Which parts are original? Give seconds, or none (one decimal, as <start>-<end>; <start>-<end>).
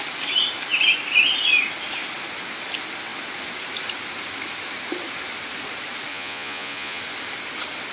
0.0-6.1; 7.0-7.9